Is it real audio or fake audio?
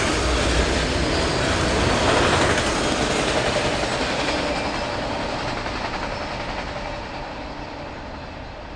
real